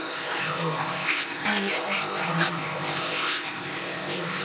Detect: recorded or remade remade